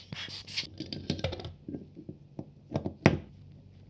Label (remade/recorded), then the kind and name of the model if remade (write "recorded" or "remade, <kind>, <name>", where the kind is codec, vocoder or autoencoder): recorded